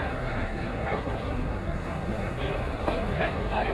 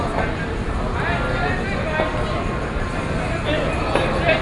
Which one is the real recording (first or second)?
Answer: second